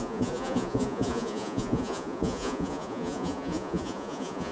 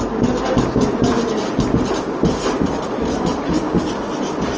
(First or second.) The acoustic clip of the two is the second